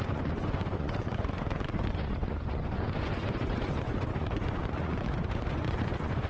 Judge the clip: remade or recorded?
remade